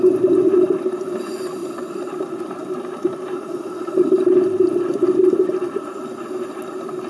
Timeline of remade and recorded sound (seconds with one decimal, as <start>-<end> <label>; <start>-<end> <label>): 0.0-1.6 recorded; 1.6-2.1 remade; 2.1-7.1 recorded